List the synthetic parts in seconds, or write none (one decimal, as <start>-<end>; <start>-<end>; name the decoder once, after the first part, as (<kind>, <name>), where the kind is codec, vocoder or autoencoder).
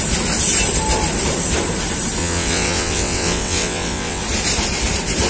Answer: 2.2-4.2 (vocoder, WaveNeXt)